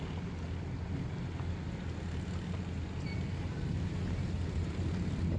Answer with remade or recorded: recorded